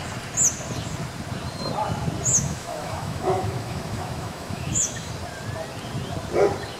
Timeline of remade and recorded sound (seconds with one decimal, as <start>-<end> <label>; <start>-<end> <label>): 0.0-2.3 recorded; 2.3-5.1 remade; 5.1-6.8 recorded